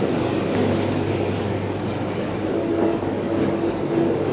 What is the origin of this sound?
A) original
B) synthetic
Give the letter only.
B